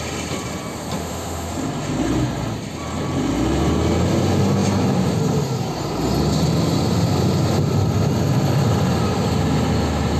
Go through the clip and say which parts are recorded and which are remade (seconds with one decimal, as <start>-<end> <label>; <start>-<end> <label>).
0.0-1.0 recorded; 1.0-1.5 remade; 1.5-10.2 recorded